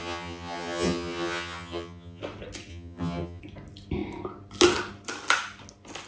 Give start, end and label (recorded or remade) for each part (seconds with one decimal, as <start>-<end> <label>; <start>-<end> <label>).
0.0-2.2 remade; 2.2-2.7 recorded; 2.7-3.4 remade; 3.4-6.1 recorded